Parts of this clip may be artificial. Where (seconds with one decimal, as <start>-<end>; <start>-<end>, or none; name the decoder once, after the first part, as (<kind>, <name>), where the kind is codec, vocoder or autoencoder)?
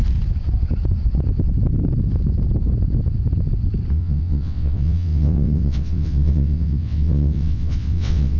3.9-8.4 (vocoder, WaveNeXt)